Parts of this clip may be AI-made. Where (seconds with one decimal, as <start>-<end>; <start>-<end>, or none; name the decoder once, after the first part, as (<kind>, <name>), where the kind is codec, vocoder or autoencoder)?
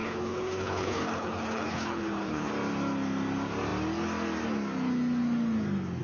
0.0-2.5 (codec, HILCodec)